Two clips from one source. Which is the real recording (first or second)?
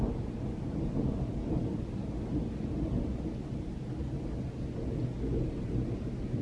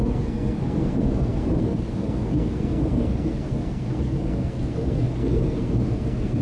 first